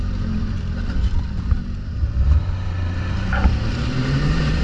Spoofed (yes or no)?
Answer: yes